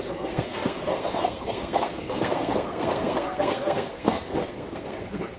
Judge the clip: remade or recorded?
remade